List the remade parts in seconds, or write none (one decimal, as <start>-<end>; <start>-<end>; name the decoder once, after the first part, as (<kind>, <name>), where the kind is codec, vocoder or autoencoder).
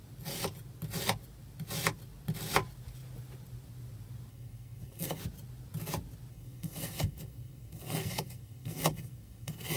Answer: 4.3-5.2 (codec, SNAC); 6.3-9.8